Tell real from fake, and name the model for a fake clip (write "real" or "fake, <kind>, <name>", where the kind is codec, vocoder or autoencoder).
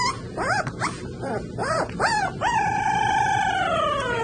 fake, vocoder, BigVGAN v2